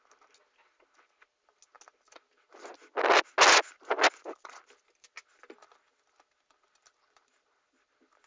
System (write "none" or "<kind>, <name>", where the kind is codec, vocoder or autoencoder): none